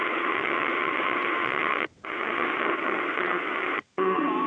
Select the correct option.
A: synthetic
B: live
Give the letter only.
A